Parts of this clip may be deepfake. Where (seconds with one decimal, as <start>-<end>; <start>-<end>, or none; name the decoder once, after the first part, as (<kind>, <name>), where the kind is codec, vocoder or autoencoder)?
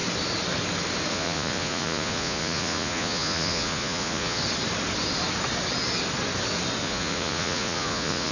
1.1-4.4 (vocoder, Vocos); 6.8-8.3